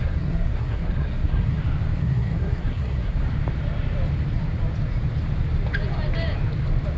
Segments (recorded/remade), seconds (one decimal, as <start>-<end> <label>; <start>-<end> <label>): 0.0-1.6 remade; 1.6-2.0 recorded; 2.0-3.2 remade; 3.2-7.0 recorded